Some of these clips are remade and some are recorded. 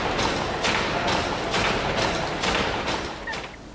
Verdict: recorded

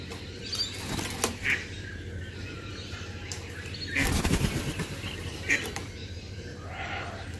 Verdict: recorded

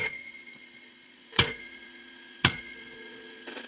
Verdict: remade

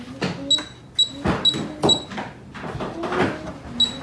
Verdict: recorded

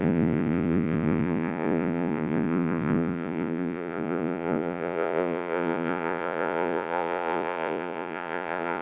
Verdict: remade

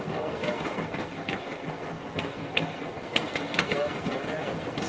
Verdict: remade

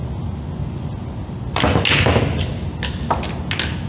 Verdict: recorded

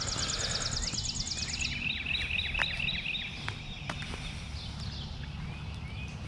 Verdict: recorded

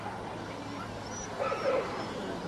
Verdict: recorded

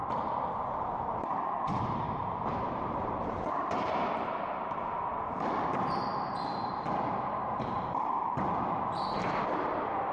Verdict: remade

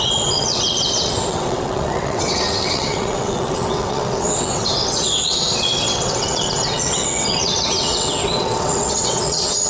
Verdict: remade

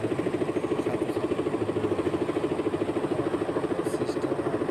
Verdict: recorded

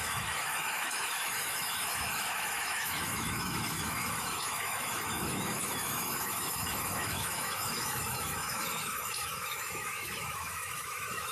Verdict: remade